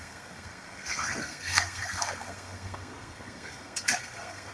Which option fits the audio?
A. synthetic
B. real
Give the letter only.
A